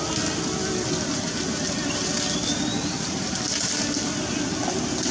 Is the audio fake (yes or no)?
no